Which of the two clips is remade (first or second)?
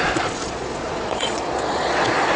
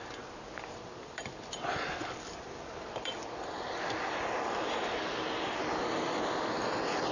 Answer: first